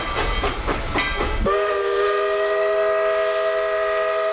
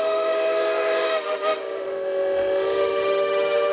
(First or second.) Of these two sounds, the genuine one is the first